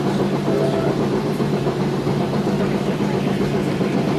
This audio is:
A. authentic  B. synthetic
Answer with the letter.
B